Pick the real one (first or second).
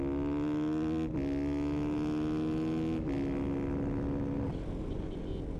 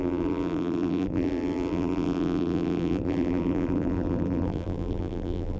first